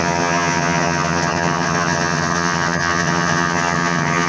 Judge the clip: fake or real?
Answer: fake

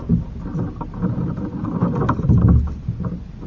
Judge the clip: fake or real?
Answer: real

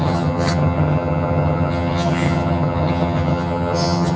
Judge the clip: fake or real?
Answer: fake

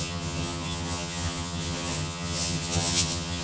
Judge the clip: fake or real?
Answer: fake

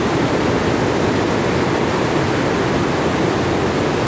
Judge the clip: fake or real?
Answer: real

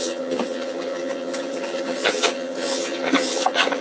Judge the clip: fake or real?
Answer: fake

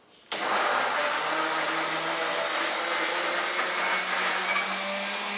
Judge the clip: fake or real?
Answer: real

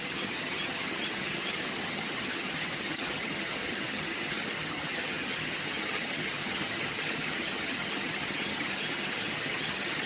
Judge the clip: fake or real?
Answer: fake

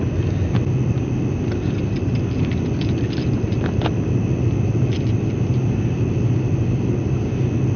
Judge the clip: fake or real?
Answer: real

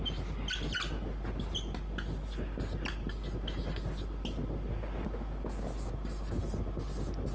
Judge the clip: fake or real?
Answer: real